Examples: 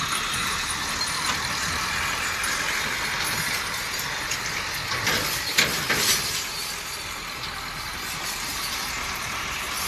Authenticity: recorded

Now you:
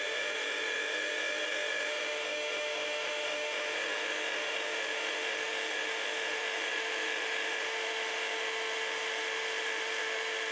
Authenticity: remade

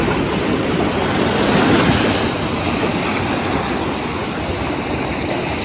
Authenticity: recorded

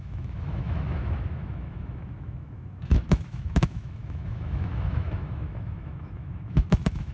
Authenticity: remade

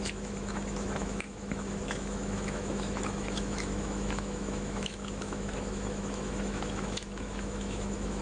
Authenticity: remade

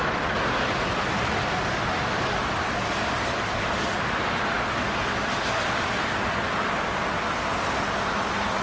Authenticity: recorded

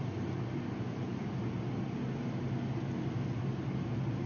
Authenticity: recorded